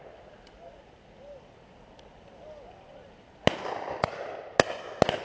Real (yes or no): yes